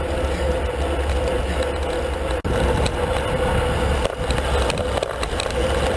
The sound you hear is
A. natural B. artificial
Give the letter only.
A